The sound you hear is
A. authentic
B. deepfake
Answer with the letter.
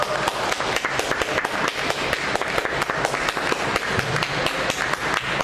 A